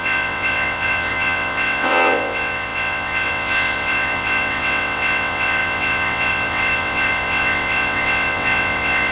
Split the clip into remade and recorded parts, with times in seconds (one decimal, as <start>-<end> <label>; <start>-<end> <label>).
0.0-9.1 remade